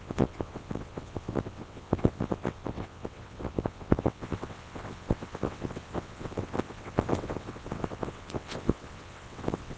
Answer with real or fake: fake